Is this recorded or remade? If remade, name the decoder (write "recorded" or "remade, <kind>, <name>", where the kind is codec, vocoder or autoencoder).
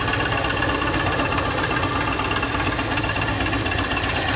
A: recorded